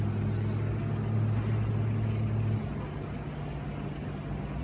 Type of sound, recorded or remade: recorded